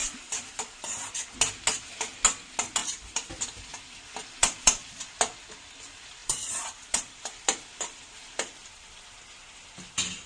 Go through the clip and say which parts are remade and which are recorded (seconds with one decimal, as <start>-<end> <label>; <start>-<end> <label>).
0.0-1.3 remade; 1.3-2.8 recorded; 2.8-3.3 remade; 3.3-4.4 recorded; 4.4-5.0 remade; 5.0-6.2 recorded; 6.2-9.2 remade; 9.2-10.3 recorded